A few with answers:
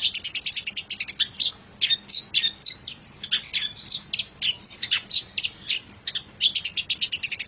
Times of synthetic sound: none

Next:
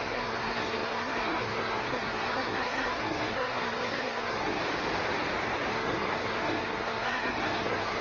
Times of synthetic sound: 0.0-4.6 (codec, SNAC); 5.7-8.0

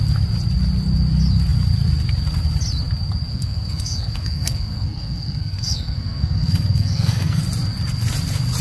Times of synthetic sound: 3.3-7.4 (codec, SNAC)

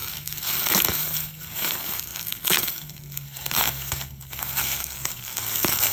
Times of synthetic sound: 0.0-5.9 (codec, SNAC)

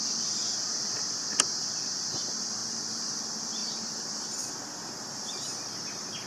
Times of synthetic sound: 2.6-3.2 (vocoder, BigVGAN v2); 3.6-4.5

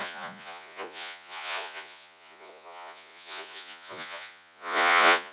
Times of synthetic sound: 0.0-5.3 (vocoder, Vocos)